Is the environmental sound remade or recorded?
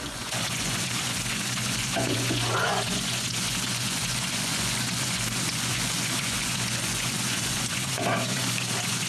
remade